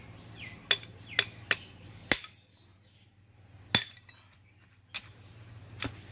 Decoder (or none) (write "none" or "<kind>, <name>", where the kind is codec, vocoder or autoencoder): none